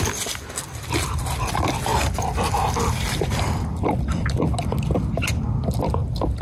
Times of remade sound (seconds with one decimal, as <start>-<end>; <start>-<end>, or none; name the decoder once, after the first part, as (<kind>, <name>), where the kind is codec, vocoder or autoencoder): none